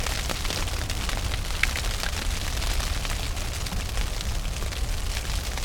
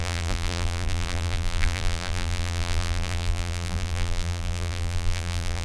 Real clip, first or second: first